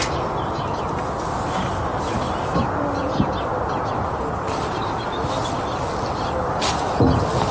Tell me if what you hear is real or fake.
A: real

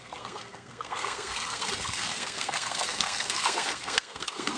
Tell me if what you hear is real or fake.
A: fake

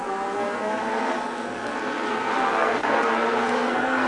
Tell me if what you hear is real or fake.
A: fake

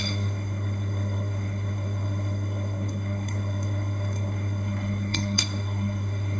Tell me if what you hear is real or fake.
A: fake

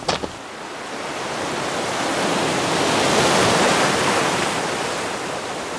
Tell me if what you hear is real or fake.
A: real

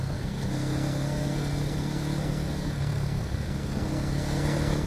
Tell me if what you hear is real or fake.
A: fake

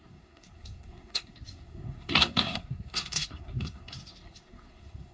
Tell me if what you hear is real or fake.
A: fake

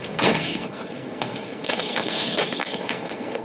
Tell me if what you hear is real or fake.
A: fake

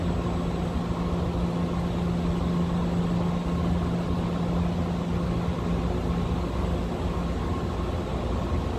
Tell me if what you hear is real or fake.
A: real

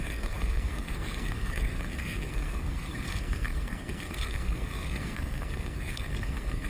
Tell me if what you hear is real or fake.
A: fake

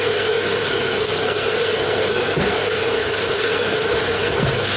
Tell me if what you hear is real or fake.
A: fake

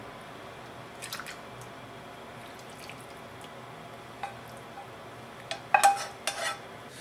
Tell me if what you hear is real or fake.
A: real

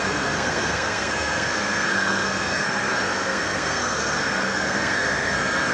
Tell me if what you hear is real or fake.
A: fake